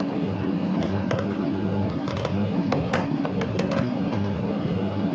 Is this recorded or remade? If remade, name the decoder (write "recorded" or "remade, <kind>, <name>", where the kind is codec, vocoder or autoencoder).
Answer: remade, codec, SNAC